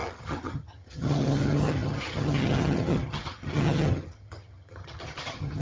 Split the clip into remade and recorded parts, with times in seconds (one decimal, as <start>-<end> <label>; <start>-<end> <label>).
0.0-5.6 remade